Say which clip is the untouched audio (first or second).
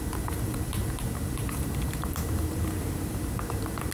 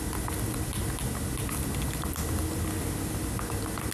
second